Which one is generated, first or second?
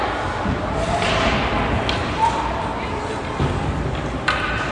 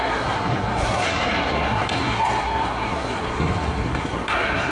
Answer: second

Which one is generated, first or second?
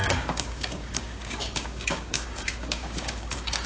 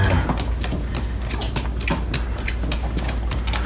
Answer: first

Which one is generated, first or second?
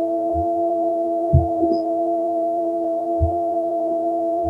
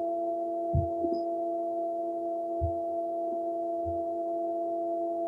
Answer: first